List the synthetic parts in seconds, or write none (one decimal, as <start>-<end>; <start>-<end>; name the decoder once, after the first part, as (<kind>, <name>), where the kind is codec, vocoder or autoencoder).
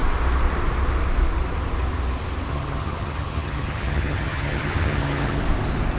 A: 2.5-5.4 (vocoder, HiFi-GAN)